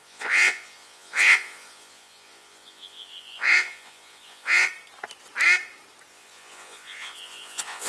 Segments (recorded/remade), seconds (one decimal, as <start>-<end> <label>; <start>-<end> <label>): 0.0-4.7 remade; 4.7-6.1 recorded; 6.1-7.9 remade